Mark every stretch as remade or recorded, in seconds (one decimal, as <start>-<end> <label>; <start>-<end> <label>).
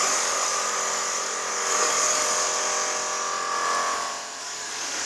0.0-2.2 remade; 2.2-4.4 recorded; 4.4-5.1 remade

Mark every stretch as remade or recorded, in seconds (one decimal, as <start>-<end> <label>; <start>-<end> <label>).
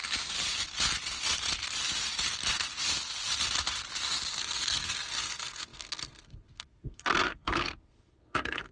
0.0-4.4 recorded; 4.4-8.7 remade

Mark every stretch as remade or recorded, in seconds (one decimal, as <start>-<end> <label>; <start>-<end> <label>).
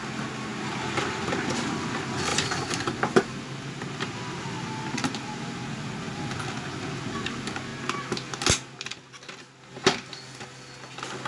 0.0-11.3 recorded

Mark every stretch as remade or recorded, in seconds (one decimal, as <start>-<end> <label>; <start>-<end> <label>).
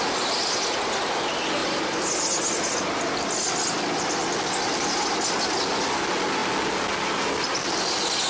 0.0-8.3 recorded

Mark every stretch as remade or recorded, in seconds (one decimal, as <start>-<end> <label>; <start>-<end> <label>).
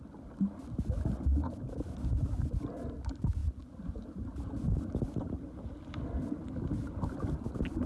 0.0-7.9 recorded